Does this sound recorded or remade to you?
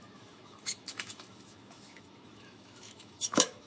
remade